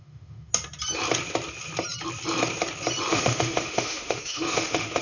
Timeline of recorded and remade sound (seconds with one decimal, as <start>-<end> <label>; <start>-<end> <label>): 0.0-0.5 remade; 0.5-3.1 recorded; 3.1-5.0 remade